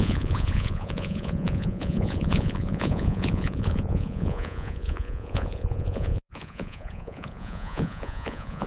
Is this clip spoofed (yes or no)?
yes